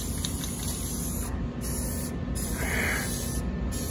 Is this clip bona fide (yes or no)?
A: yes